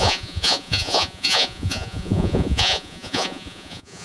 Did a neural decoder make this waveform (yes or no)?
yes